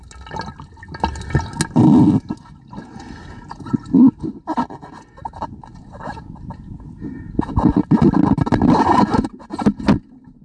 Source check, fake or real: real